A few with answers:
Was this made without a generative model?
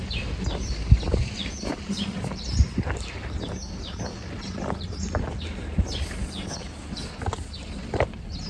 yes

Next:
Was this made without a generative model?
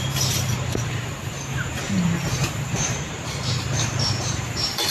no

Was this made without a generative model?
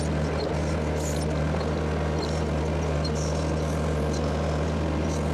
yes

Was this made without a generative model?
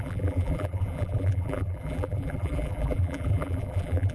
no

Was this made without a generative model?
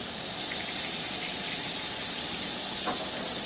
yes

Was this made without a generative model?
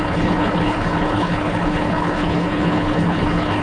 no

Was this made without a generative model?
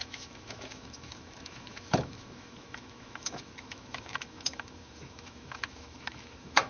no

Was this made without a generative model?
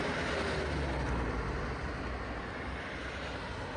yes